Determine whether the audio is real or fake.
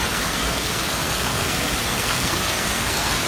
fake